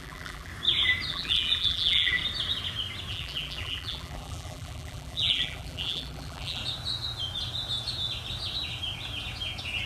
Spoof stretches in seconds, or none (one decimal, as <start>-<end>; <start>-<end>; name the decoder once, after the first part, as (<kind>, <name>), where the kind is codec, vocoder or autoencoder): 0.0-0.5 (vocoder, BigVGAN v2); 1.1-2.2; 3.1-6.6